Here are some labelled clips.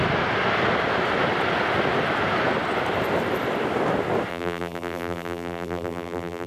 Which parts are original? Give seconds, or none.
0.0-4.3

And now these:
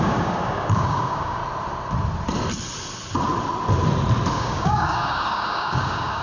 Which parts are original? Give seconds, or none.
1.4-4.3

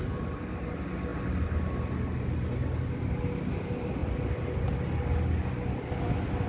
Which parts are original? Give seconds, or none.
0.0-6.5

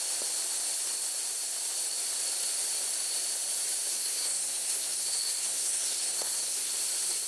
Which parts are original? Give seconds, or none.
0.0-3.9; 6.7-7.3